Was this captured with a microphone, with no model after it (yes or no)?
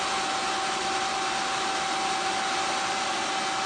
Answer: yes